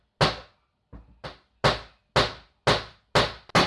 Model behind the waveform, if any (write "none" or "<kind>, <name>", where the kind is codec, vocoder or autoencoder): none